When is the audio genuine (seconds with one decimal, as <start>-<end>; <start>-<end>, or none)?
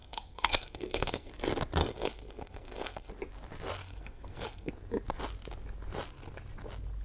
1.3-1.8; 3.1-3.8; 4.7-7.0